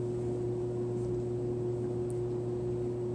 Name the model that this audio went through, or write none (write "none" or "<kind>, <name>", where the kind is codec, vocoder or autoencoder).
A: none